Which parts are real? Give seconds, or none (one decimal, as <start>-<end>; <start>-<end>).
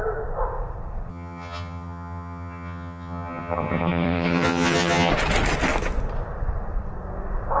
0.0-1.1; 5.1-7.6